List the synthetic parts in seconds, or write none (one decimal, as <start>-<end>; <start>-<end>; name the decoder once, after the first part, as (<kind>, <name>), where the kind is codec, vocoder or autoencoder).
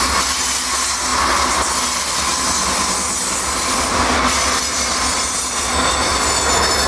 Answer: none